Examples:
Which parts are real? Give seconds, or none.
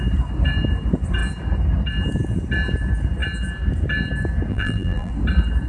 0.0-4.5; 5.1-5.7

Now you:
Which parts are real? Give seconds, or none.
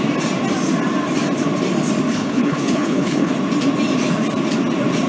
0.0-2.1; 3.3-5.1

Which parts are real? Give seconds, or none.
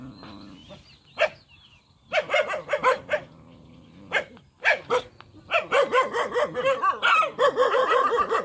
0.0-8.4